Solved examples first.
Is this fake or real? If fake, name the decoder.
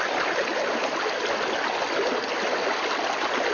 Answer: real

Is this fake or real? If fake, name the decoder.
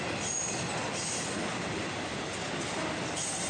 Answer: fake, vocoder, BigVGAN v2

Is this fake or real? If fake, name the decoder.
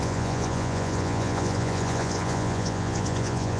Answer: fake, vocoder, Vocos